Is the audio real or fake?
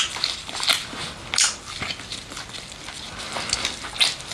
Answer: real